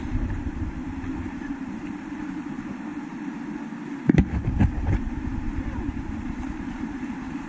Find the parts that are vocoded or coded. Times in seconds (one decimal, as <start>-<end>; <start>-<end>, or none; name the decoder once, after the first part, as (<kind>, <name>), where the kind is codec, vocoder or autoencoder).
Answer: 0.0-2.9 (vocoder, BigVGAN v2); 4.6-7.5